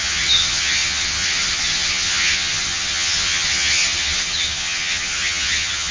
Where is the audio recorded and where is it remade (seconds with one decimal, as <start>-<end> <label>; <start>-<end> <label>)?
0.0-5.9 remade

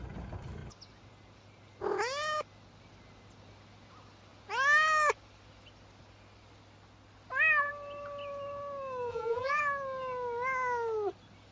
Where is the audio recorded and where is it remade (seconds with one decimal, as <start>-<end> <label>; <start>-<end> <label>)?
0.0-9.1 recorded; 9.1-9.6 remade; 9.6-11.5 recorded

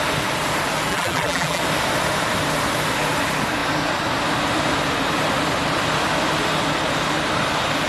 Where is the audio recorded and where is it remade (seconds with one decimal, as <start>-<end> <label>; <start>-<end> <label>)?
0.0-0.9 recorded; 0.9-1.6 remade; 1.6-7.9 recorded

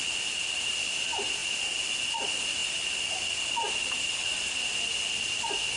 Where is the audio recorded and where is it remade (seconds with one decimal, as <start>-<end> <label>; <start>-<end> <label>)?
0.0-5.8 recorded

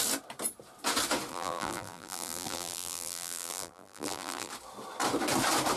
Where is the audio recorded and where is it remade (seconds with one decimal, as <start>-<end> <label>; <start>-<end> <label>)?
0.0-1.3 recorded; 1.3-4.5 remade; 4.5-5.8 recorded

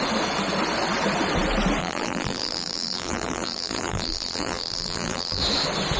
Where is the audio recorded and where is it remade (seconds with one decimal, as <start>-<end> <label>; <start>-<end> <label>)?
0.0-1.8 recorded; 1.8-5.4 remade; 5.4-6.0 recorded